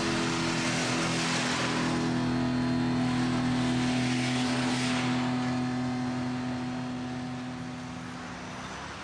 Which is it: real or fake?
real